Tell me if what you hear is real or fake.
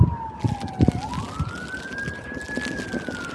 real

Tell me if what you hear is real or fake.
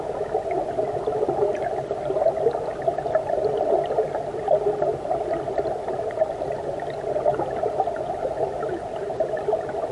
real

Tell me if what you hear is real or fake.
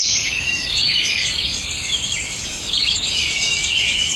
fake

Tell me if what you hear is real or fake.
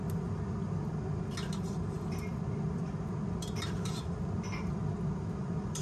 real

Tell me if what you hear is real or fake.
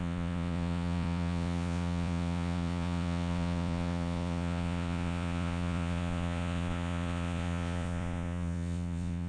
fake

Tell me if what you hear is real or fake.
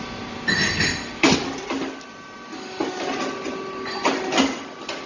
real